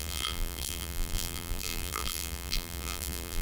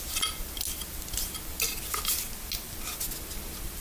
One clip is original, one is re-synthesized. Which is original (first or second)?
second